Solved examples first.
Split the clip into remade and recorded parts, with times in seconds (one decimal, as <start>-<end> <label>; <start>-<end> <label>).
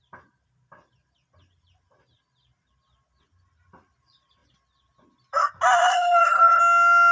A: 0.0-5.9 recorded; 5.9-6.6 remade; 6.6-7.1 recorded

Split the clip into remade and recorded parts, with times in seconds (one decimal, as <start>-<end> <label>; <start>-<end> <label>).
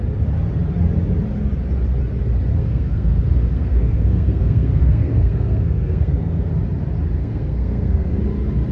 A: 0.0-2.5 recorded; 2.5-6.5 remade; 6.5-7.2 recorded; 7.2-8.2 remade; 8.2-8.7 recorded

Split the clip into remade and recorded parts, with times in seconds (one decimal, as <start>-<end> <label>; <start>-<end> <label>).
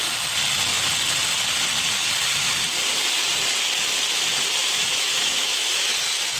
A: 0.0-4.6 recorded; 4.6-5.9 remade; 5.9-6.4 recorded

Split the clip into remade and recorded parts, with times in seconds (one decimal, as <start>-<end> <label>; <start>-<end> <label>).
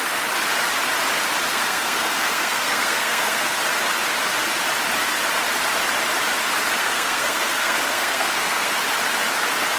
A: 0.0-1.5 recorded; 1.5-3.6 remade; 3.6-6.8 recorded; 6.8-8.8 remade; 8.8-9.8 recorded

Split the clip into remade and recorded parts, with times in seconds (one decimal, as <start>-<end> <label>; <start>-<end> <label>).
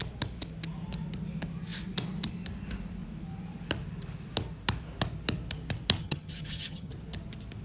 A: 0.0-6.0 recorded; 6.0-6.9 remade; 6.9-7.6 recorded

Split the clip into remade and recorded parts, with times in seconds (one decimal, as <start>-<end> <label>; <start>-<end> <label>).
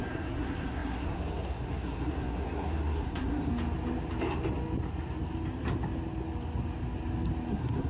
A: 0.0-3.5 remade; 3.5-7.5 recorded; 7.5-7.9 remade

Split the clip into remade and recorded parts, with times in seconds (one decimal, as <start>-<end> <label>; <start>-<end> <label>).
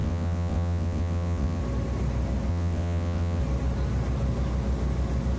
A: 0.0-1.6 remade; 1.6-2.5 recorded; 2.5-3.4 remade; 3.4-5.4 recorded